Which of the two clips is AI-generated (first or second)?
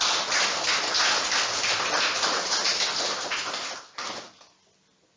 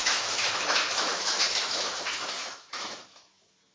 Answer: second